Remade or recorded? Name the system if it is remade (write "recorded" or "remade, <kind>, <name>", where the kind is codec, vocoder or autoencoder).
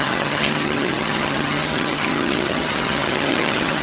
remade, vocoder, HiFi-GAN